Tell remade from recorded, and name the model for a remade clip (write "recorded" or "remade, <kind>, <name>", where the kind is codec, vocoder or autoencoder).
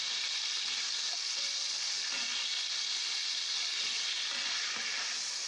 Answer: recorded